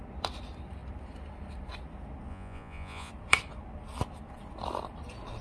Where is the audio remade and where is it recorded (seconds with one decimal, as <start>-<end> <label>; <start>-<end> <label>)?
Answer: 0.0-2.3 recorded; 2.3-3.1 remade; 3.1-5.4 recorded

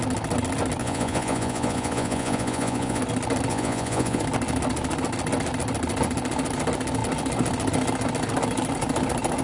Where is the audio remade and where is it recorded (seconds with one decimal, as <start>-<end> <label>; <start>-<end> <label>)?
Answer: 0.0-0.8 recorded; 0.8-3.0 remade; 3.0-3.5 recorded; 3.5-4.2 remade; 4.2-9.4 recorded